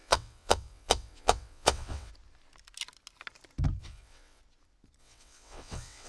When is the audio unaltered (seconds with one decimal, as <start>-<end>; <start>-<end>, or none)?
2.1-3.8; 4.4-5.0